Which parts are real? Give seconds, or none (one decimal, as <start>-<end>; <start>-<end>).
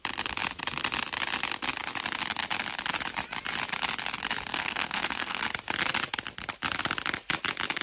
0.0-4.5; 5.4-7.8